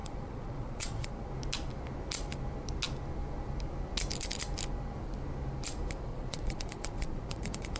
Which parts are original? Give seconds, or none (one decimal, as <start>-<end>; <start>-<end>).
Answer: 1.3-6.1